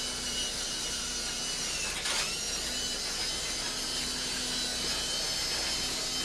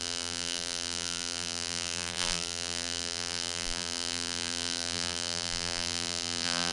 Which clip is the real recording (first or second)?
first